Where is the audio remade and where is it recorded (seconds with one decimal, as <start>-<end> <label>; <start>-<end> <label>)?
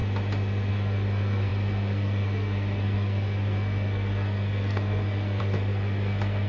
0.0-0.7 recorded; 0.7-6.5 remade